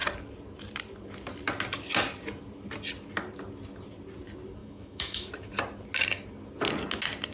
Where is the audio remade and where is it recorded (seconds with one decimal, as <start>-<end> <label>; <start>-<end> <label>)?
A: 0.0-4.6 recorded; 4.6-5.3 remade; 5.3-7.3 recorded